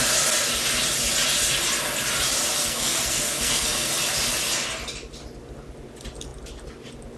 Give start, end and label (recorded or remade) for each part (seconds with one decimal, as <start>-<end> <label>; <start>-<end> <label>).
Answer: 0.0-2.6 recorded; 2.6-3.9 remade; 3.9-7.2 recorded